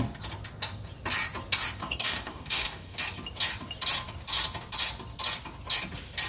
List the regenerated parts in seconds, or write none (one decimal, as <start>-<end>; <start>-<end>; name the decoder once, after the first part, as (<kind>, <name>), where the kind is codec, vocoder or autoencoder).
1.8-3.0 (codec, DAC)